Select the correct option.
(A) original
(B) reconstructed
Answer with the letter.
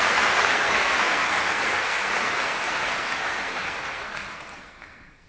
B